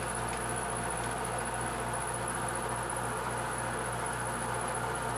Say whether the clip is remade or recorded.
recorded